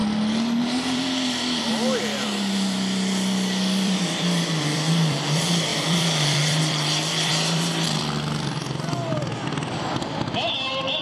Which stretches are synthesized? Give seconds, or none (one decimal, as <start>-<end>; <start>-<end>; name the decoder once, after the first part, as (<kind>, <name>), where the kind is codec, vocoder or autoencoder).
0.6-11.0 (vocoder, BigVGAN v2)